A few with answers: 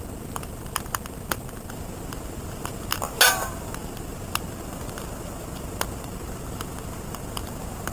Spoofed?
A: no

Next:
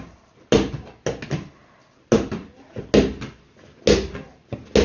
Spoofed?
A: no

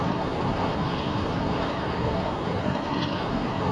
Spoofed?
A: yes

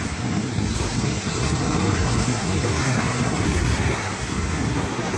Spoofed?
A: yes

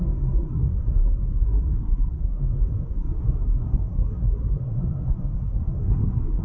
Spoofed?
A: yes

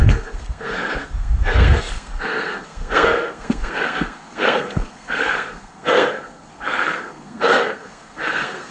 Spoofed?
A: yes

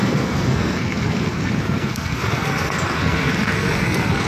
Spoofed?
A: yes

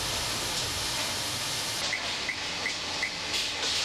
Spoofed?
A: no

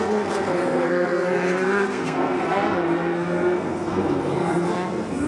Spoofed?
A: yes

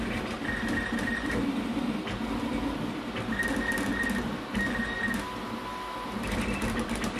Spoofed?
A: no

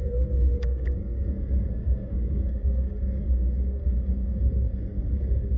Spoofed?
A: yes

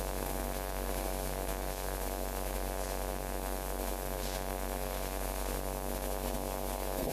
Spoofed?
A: yes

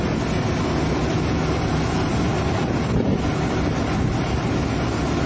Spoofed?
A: no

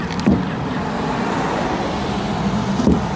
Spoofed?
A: no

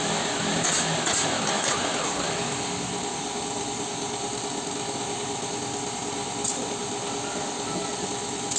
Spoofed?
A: no